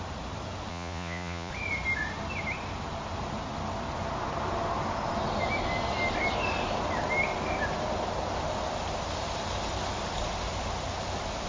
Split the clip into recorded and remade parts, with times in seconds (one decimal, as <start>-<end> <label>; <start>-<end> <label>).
0.0-0.7 recorded; 0.7-1.5 remade; 1.5-11.5 recorded

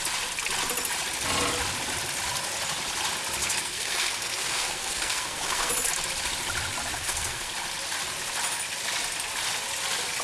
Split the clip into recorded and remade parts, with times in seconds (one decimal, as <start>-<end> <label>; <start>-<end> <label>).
0.0-3.4 recorded; 3.4-5.7 remade; 5.7-6.9 recorded; 6.9-7.5 remade; 7.5-10.2 recorded

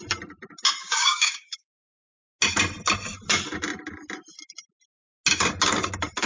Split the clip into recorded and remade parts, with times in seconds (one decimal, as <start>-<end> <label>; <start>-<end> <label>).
0.0-0.8 recorded; 0.8-2.1 remade; 2.1-6.3 recorded

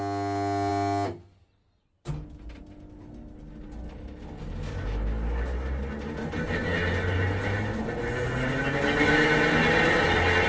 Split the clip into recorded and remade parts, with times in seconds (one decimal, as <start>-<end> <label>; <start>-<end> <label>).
0.0-10.5 recorded

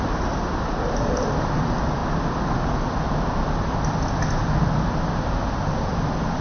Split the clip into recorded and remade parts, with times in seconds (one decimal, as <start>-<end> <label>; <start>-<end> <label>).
0.0-6.4 recorded